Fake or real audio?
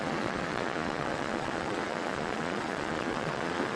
fake